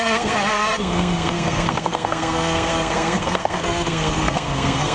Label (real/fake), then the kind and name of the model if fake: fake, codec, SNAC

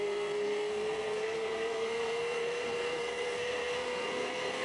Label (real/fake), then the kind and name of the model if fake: fake, codec, SNAC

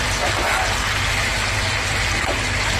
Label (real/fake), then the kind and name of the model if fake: real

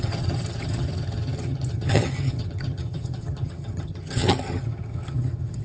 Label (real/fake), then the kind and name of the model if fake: fake, vocoder, HiFi-GAN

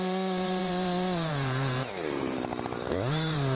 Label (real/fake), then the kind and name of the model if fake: fake, vocoder, BigVGAN v2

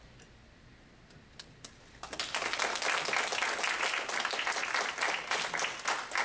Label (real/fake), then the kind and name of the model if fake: fake, vocoder, BigVGAN v2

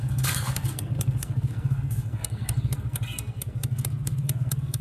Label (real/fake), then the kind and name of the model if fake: fake, codec, SNAC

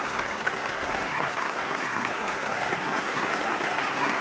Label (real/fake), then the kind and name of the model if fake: fake, codec, SNAC